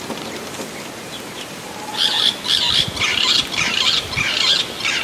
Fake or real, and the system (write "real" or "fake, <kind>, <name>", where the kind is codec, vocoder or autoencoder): fake, vocoder, BigVGAN v2